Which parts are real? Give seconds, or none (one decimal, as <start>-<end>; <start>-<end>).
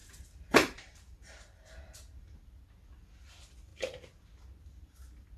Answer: 2.4-3.7; 4.2-5.4